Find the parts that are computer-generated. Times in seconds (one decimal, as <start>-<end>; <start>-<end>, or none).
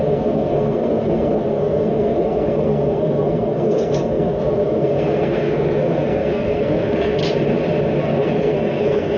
0.0-7.2; 7.9-9.2